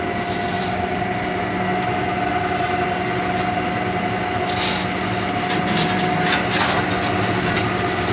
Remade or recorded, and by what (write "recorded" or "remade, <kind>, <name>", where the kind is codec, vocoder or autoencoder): recorded